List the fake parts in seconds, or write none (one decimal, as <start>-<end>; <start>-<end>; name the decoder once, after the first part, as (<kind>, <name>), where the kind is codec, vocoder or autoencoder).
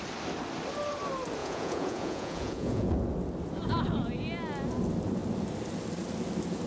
1.4-2.9 (vocoder, Vocos)